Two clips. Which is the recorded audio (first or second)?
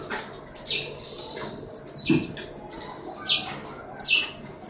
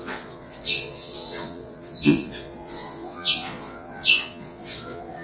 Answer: first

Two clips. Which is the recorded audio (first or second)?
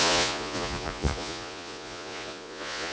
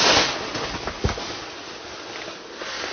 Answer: second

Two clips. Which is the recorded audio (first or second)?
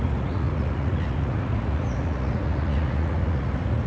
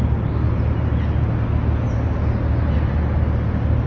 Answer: second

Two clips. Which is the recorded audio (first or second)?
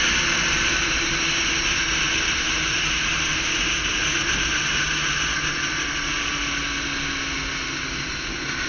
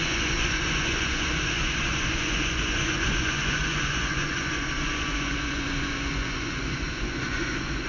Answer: first